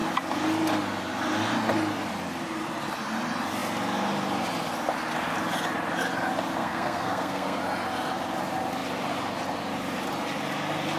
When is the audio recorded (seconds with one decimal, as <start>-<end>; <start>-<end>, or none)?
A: 0.0-6.6; 7.6-11.0